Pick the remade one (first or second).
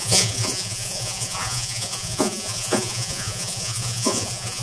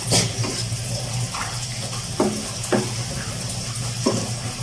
first